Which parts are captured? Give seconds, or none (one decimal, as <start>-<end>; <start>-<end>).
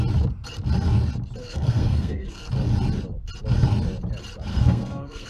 0.0-1.4; 2.5-4.5